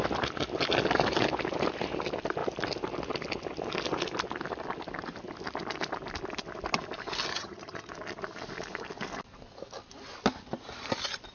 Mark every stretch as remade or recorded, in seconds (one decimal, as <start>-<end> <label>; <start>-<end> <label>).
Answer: 0.0-7.3 recorded; 7.3-7.9 remade; 7.9-11.3 recorded